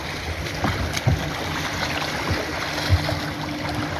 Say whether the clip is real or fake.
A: real